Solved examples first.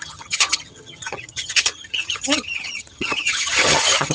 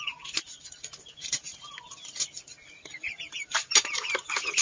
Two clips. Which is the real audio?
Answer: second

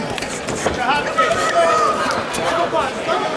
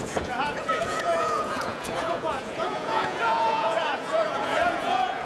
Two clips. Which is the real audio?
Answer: first